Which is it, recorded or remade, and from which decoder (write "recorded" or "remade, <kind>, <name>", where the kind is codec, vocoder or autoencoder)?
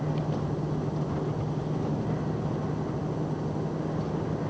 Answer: recorded